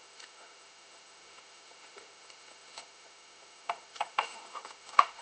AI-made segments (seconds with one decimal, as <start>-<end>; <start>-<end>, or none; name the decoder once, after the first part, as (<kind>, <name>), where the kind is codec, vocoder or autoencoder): 0.0-5.2 (autoencoder, DAC-VAE)